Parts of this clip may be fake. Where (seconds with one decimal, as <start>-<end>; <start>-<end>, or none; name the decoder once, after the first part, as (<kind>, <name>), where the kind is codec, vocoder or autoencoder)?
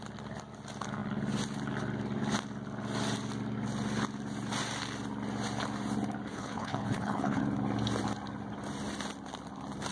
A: 6.3-7.4 (codec, HILCodec)